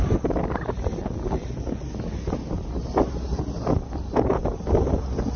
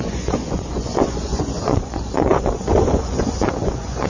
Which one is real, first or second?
first